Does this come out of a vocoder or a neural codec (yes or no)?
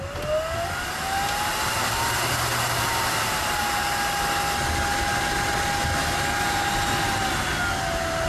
no